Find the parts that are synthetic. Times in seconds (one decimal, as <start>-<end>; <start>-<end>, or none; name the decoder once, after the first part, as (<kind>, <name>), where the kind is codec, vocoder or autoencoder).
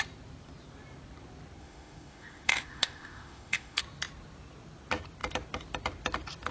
1.6-3.8 (autoencoder, DAC-VAE)